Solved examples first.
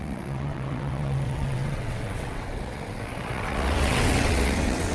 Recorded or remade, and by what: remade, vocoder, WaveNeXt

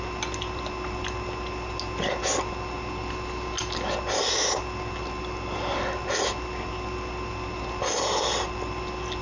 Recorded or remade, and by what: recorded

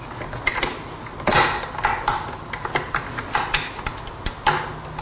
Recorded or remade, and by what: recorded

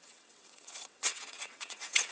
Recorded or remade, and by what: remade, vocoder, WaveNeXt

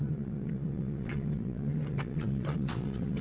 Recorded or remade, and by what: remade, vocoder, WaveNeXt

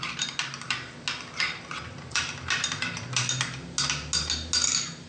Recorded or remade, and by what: recorded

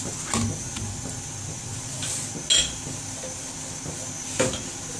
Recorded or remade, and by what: recorded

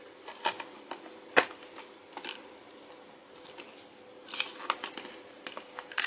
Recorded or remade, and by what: recorded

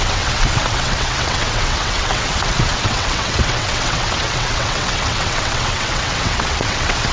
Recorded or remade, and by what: remade, vocoder, WaveNeXt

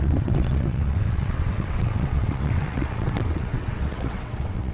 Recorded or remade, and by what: remade, vocoder, WaveNeXt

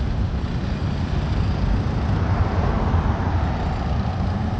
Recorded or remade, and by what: recorded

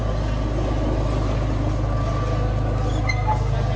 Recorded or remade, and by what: recorded